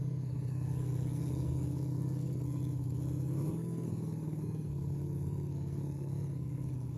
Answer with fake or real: fake